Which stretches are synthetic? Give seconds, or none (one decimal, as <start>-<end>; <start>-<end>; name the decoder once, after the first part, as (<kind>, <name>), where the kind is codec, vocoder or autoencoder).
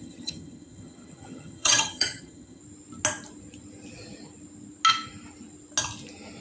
0.0-2.6 (vocoder, HiFi-GAN)